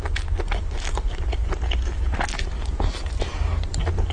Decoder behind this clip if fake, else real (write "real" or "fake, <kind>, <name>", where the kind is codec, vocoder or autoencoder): real